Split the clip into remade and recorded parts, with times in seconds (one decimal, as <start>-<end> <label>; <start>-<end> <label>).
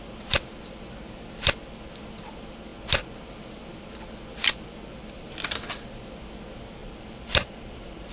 0.0-6.8 recorded; 6.8-8.1 remade